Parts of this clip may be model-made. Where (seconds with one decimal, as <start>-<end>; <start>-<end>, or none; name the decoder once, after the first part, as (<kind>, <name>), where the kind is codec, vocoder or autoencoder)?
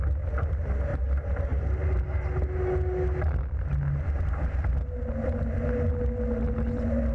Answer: none